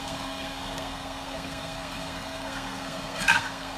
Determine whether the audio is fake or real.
fake